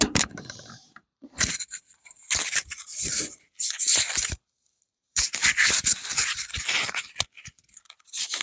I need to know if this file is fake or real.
fake